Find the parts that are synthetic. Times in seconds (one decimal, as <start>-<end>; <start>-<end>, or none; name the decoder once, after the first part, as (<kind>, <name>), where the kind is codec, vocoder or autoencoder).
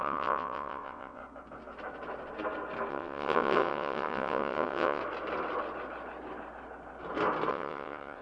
0.0-1.2 (vocoder, WaveNeXt); 2.9-5.0; 7.5-8.2